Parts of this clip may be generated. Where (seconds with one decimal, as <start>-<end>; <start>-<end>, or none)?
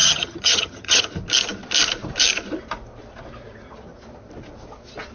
0.0-1.0